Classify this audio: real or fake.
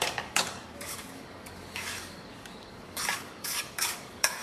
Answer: fake